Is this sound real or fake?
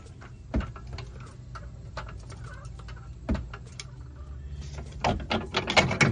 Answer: real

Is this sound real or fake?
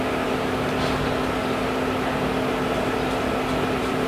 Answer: real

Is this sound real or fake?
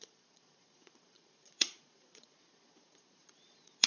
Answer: fake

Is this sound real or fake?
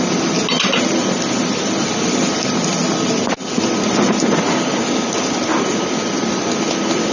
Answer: real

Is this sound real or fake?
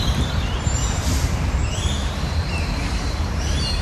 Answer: fake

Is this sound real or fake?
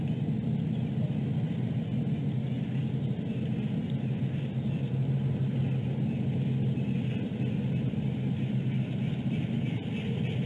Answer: real